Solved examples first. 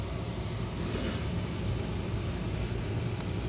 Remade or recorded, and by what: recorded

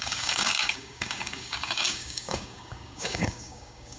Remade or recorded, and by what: remade, codec, DAC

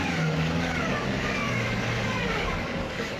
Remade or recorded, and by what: remade, codec, DAC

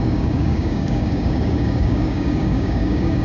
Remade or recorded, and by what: remade, codec, DAC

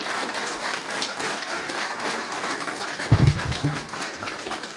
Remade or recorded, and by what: remade, codec, DAC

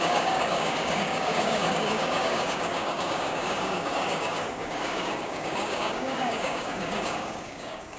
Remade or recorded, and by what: remade, codec, DAC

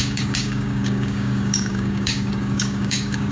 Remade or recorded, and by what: remade, codec, DAC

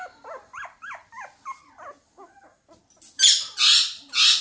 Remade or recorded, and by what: recorded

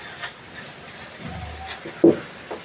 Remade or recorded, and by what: recorded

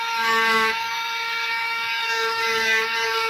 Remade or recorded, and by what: remade, codec, DAC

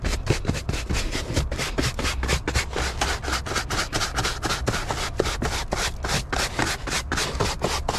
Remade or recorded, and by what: recorded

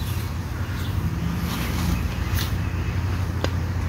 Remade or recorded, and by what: recorded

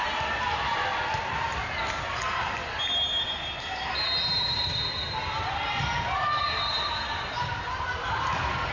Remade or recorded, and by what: recorded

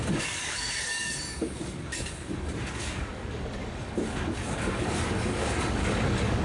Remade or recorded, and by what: remade, codec, DAC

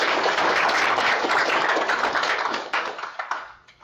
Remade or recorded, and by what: remade, codec, DAC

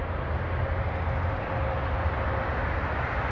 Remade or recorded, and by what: recorded